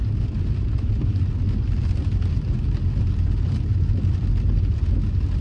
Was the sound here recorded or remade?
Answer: recorded